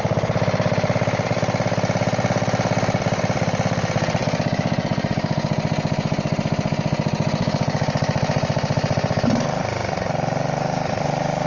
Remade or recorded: recorded